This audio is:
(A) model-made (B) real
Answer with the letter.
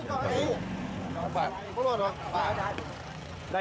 A